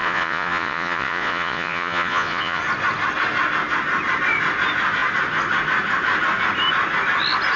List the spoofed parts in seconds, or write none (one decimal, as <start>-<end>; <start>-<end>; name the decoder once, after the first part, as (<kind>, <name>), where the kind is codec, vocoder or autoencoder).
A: 0.0-2.6 (vocoder, Vocos)